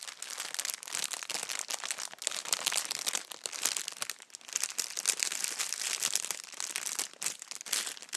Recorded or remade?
recorded